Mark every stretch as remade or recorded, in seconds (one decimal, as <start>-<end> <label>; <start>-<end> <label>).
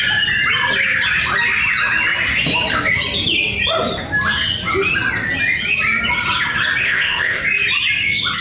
0.0-6.8 recorded; 6.8-7.4 remade; 7.4-8.4 recorded